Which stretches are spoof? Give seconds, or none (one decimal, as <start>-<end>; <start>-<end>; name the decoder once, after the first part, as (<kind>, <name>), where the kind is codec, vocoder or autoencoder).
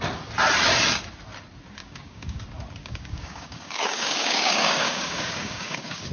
1.8-2.4 (codec, DAC); 2.8-6.1